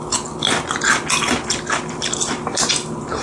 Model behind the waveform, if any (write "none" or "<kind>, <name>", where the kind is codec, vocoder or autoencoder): none